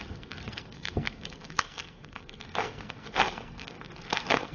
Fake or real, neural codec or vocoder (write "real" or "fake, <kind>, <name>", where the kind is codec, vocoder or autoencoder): fake, codec, SNAC